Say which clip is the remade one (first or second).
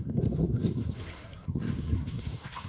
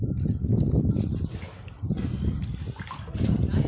first